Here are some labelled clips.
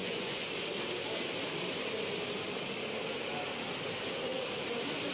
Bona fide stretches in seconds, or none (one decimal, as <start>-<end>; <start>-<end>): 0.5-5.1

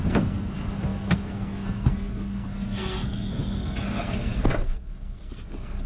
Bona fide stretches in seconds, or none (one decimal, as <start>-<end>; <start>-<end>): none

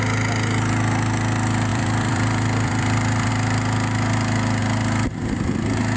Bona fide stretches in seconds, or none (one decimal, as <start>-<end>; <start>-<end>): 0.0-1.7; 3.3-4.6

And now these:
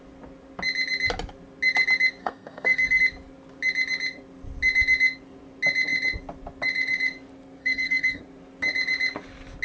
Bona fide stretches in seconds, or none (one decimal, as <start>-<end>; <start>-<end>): 0.0-2.2; 3.0-7.6; 8.2-9.6

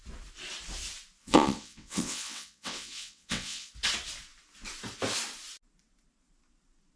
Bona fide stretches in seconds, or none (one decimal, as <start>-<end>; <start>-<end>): 0.0-1.2; 3.7-7.0

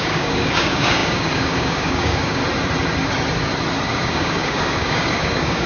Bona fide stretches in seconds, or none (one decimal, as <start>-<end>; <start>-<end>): 2.4-3.9